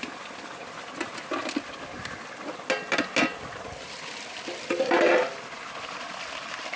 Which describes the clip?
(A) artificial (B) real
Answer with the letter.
B